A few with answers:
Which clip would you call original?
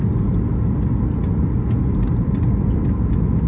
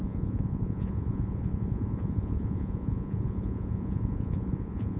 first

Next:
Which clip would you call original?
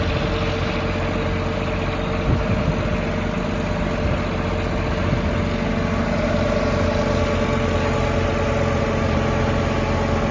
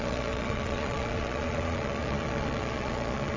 first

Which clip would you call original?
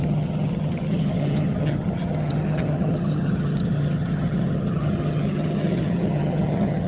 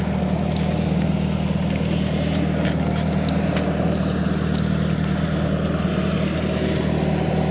second